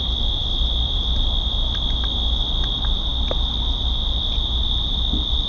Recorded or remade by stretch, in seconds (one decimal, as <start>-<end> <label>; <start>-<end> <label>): 0.0-5.5 recorded